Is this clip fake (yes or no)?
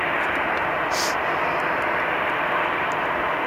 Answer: no